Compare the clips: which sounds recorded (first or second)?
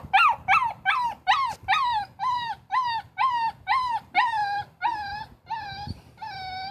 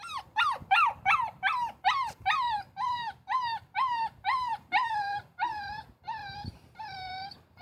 first